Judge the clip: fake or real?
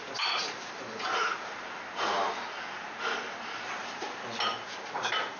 real